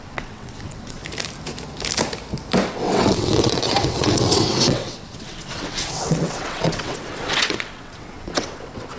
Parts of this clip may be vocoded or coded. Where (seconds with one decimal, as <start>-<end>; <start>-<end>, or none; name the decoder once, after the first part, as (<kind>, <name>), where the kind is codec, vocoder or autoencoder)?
0.0-1.0 (vocoder, WaveNeXt); 2.7-9.0